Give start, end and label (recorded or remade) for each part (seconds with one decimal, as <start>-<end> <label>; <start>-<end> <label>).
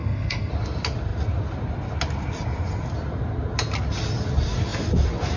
0.0-0.5 remade; 0.5-5.4 recorded